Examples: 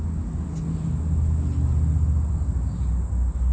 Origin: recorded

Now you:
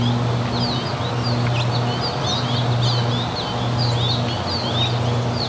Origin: recorded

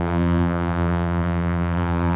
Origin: remade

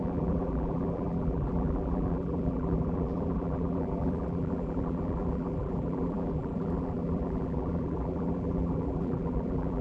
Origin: remade